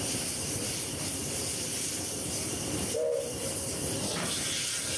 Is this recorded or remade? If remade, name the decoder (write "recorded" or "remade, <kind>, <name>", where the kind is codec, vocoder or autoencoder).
remade, vocoder, BigVGAN v2